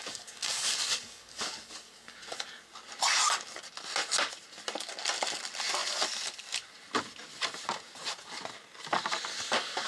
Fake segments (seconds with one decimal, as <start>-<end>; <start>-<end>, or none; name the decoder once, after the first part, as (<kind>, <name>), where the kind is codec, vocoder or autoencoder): 0.0-2.6 (codec, DAC); 9.3-9.9